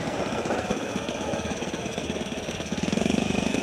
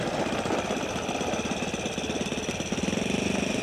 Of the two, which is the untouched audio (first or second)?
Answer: second